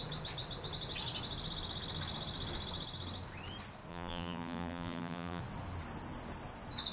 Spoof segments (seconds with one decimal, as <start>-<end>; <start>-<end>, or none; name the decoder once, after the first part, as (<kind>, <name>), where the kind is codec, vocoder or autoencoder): 3.9-5.4 (vocoder, BigVGAN v2)